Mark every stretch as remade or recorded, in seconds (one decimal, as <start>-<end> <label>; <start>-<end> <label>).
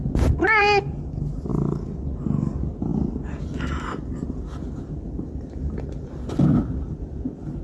0.0-7.6 recorded